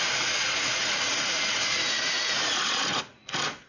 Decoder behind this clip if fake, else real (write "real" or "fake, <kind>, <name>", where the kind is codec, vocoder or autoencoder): fake, vocoder, Vocos